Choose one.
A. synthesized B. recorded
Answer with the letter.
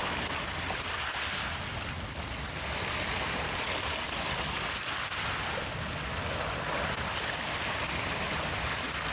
B